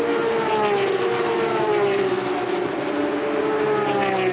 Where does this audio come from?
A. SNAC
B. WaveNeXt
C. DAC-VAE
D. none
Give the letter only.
D